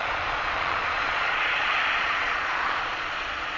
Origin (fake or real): fake